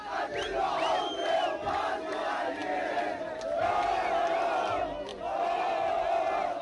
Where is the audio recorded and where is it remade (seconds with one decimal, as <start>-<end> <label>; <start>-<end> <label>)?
0.0-5.1 recorded; 5.1-6.1 remade; 6.1-6.6 recorded